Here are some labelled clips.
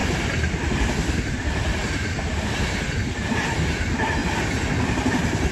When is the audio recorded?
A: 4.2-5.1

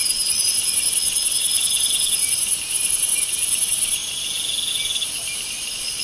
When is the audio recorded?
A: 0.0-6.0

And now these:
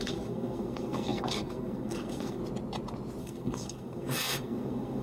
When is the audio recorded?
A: 2.4-3.2